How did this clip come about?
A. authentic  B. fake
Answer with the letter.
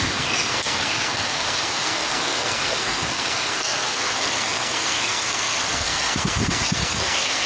B